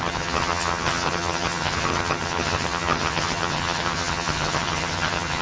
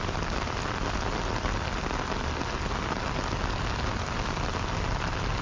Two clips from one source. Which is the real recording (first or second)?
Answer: second